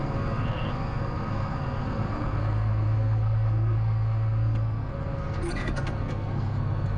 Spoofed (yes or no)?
yes